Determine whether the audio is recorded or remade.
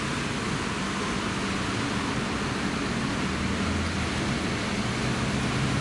recorded